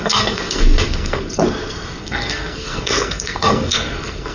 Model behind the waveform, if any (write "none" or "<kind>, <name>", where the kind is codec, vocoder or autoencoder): codec, SNAC